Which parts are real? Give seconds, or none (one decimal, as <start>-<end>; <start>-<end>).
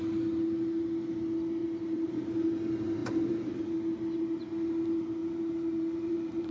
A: 0.0-1.6; 2.2-5.2